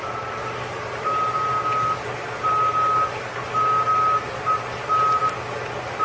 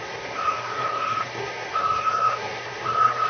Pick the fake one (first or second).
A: second